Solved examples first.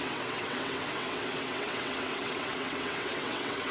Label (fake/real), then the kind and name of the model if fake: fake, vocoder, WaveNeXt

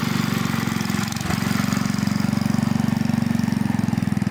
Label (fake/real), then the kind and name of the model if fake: real